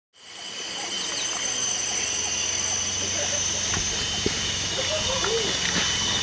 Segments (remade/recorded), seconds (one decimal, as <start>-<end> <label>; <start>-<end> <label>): 0.0-6.2 recorded